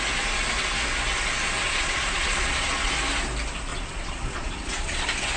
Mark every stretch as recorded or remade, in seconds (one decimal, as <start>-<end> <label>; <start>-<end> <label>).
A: 0.0-1.6 recorded; 1.6-2.9 remade; 2.9-3.7 recorded; 3.7-5.0 remade; 5.0-5.4 recorded